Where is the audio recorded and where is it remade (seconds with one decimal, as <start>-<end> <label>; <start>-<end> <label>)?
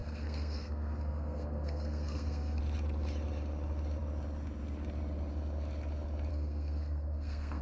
0.0-2.6 remade; 2.6-6.3 recorded; 6.3-7.6 remade